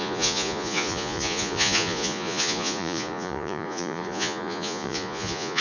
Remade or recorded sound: remade